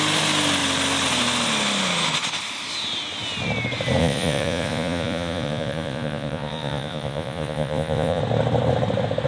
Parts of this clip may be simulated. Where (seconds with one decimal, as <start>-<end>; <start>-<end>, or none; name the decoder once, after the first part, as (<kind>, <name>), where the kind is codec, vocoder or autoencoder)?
4.0-8.2 (vocoder, Vocos)